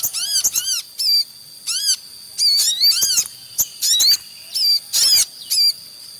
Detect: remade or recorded recorded